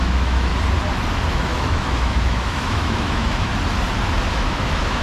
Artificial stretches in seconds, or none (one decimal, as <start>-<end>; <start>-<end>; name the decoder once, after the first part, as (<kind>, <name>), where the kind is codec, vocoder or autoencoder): 0.0-0.5 (autoencoder, DAC-VAE); 1.3-3.5; 4.3-5.0